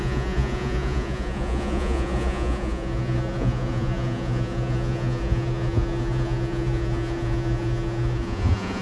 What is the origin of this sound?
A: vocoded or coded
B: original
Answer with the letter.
A